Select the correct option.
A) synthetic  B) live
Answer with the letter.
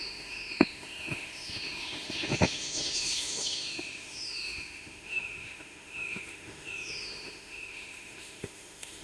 A